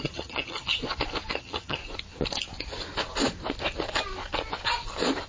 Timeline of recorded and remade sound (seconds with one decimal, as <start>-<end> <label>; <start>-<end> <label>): 0.0-0.8 remade; 0.8-1.4 recorded; 1.4-1.8 remade; 1.8-5.3 recorded